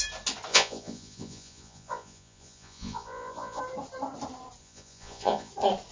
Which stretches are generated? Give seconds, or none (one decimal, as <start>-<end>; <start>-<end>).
0.5-3.6; 4.6-5.5